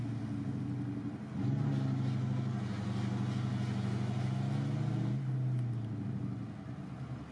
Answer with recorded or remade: recorded